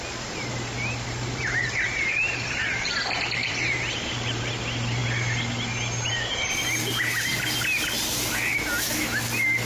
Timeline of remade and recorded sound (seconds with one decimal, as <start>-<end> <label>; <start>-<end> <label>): 0.0-0.5 recorded; 0.5-4.4 remade; 4.4-9.7 recorded